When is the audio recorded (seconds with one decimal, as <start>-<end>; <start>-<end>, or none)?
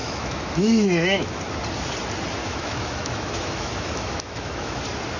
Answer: 1.4-2.4; 4.8-5.2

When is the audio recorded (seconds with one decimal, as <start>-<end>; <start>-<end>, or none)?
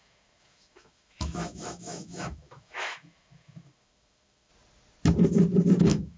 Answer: 4.5-5.8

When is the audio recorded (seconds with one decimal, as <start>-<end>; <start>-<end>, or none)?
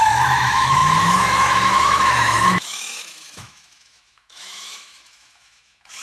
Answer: none